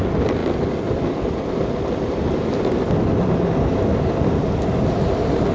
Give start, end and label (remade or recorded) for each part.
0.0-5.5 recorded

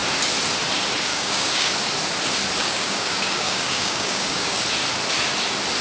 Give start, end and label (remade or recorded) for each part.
0.0-1.1 recorded; 1.1-1.7 remade; 1.7-2.6 recorded; 2.6-4.6 remade; 4.6-5.8 recorded

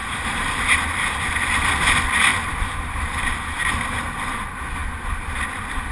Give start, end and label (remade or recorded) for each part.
0.0-1.1 remade; 1.1-2.3 recorded; 2.3-3.3 remade; 3.3-5.9 recorded

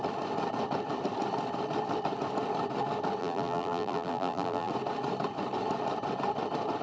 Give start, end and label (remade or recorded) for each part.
0.0-3.2 recorded; 3.2-4.7 remade; 4.7-6.8 recorded

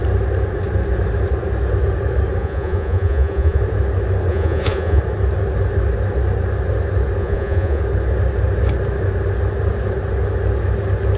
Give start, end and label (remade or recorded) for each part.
0.0-2.4 recorded; 2.4-3.6 remade; 3.6-4.3 recorded; 4.3-5.0 remade; 5.0-7.2 recorded; 7.2-7.8 remade; 7.8-11.2 recorded

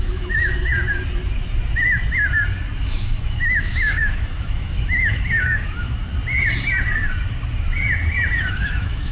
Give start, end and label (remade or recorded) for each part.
0.0-0.7 remade; 0.7-2.8 recorded; 2.8-6.0 remade; 6.0-8.4 recorded; 8.4-9.1 remade

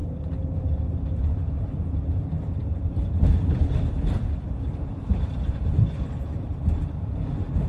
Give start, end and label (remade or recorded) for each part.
0.0-3.7 remade; 3.7-4.2 recorded; 4.2-5.7 remade; 5.7-7.7 recorded

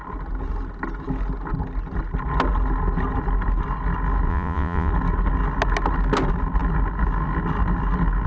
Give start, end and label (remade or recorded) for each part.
0.0-4.3 recorded; 4.3-4.9 remade; 4.9-8.3 recorded